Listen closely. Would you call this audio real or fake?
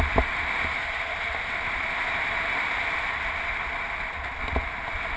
real